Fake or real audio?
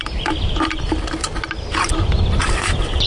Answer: real